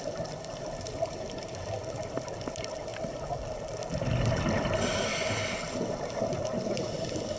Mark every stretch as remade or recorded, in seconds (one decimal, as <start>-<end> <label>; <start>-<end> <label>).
0.0-2.9 remade; 2.9-4.3 recorded; 4.3-7.4 remade